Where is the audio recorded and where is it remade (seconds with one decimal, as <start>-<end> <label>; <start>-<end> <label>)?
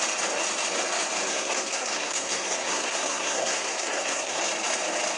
0.0-1.3 recorded; 1.3-4.4 remade; 4.4-5.2 recorded